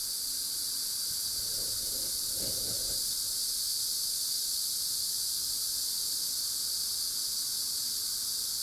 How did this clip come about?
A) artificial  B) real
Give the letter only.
B